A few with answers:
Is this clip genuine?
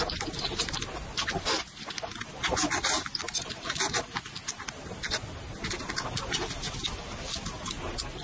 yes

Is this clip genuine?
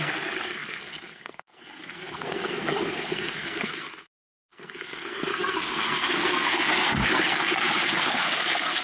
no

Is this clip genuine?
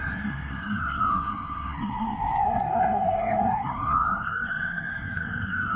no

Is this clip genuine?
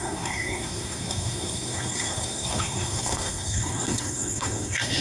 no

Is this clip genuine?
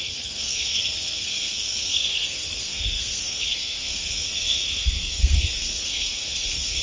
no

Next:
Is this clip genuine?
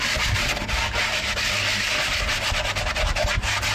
yes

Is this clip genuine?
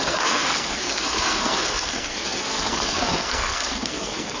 no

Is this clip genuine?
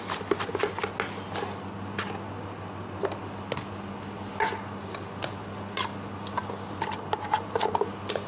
yes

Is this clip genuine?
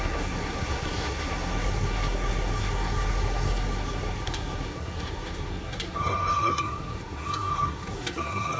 no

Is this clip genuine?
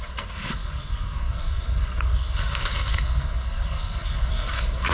no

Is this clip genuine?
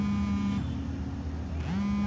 yes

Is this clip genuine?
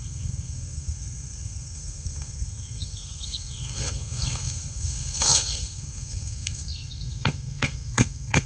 no